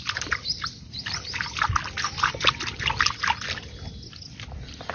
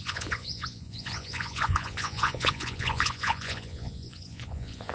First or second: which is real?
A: first